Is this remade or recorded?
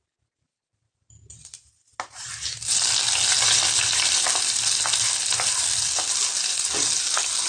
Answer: recorded